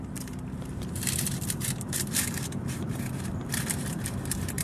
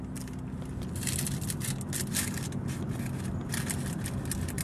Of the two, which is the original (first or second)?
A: second